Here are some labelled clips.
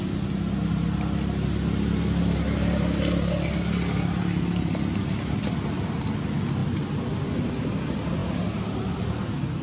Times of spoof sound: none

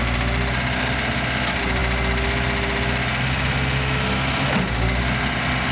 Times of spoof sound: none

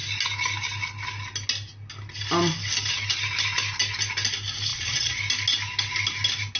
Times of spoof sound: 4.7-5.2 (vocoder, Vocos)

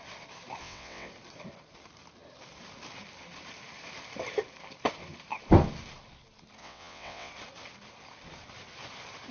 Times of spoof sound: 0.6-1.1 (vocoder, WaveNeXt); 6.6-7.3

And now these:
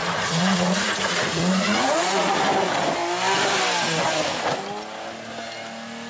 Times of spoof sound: 0.0-2.4 (vocoder, Vocos)

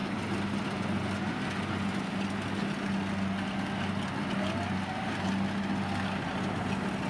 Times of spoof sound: none

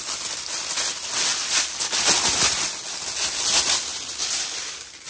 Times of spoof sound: none